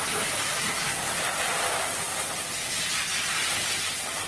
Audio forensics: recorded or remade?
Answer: recorded